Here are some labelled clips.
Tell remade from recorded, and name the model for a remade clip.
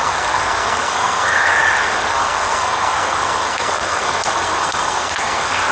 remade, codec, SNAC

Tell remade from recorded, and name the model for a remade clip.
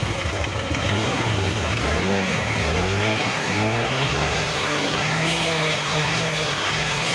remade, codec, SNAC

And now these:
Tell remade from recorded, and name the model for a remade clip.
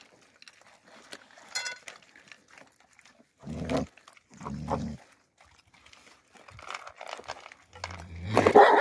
recorded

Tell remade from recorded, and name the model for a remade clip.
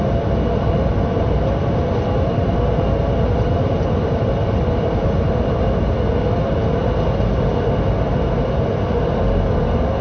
recorded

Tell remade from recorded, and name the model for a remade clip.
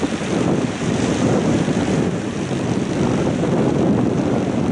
recorded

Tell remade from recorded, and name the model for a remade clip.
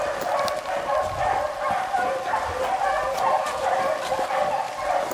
recorded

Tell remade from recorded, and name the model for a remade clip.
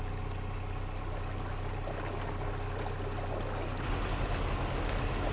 recorded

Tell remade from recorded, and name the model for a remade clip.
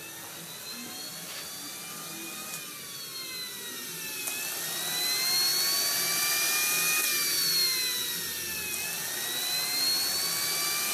recorded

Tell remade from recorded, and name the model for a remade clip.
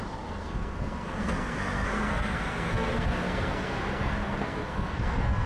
remade, codec, SNAC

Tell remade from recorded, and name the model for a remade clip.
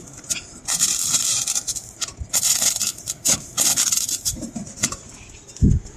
recorded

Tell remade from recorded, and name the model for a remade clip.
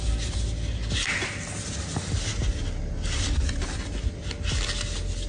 recorded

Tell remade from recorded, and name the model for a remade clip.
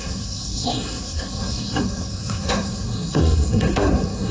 remade, codec, SNAC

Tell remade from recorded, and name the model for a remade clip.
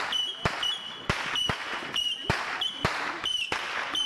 recorded